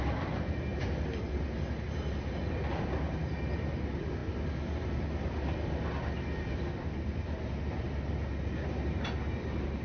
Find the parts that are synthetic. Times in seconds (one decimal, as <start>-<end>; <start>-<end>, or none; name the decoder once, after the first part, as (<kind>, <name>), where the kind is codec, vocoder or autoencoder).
none